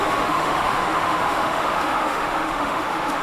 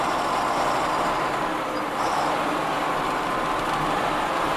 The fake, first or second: first